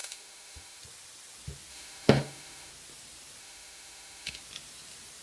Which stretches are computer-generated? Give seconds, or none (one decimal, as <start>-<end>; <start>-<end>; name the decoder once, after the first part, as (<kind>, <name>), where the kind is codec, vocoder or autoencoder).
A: 0.0-0.8 (autoencoder, DAC-VAE); 1.7-2.7; 3.4-4.4